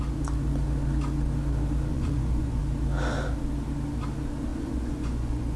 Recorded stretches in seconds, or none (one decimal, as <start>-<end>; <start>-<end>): 0.0-1.9; 2.6-4.5